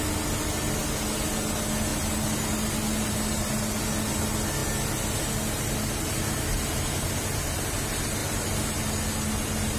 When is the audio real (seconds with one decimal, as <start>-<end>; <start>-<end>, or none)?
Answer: 0.0-9.8